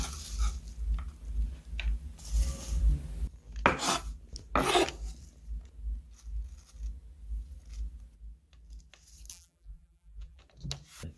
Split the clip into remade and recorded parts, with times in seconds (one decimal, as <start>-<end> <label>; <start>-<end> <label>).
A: 0.0-9.3 recorded; 9.3-10.4 remade; 10.4-11.2 recorded